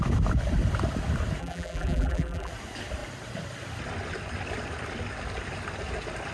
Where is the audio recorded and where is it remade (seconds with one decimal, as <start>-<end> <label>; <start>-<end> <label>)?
0.0-1.4 recorded; 1.4-2.5 remade; 2.5-6.3 recorded